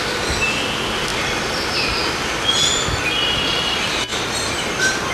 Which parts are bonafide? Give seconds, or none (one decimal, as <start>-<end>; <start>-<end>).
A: 0.0-5.1